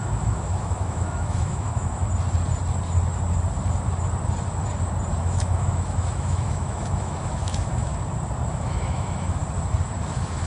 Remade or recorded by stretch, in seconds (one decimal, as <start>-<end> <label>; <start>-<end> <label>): 0.0-2.0 remade; 2.0-5.2 recorded; 5.2-7.9 remade; 7.9-8.5 recorded; 8.5-9.4 remade; 9.4-10.1 recorded; 10.1-10.5 remade